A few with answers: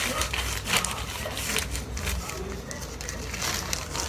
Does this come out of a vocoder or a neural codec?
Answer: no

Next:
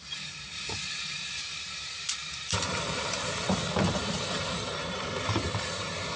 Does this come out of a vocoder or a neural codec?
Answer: yes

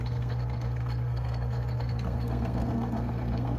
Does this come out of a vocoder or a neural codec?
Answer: yes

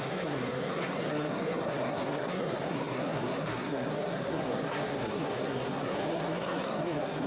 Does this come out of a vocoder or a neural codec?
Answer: yes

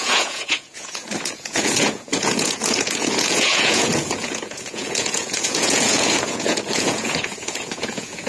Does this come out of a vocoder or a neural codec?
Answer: yes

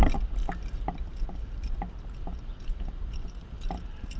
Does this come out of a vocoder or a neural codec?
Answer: no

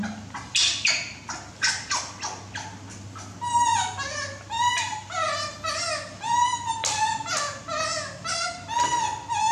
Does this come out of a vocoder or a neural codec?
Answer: no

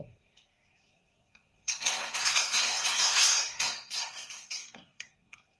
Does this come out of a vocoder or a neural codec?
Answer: yes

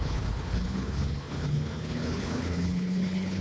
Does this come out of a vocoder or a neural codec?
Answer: yes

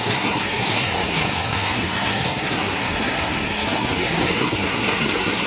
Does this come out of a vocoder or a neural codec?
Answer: yes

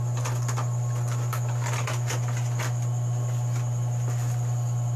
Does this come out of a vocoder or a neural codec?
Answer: no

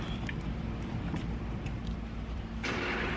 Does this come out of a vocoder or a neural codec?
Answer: yes